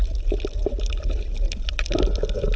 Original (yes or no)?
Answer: yes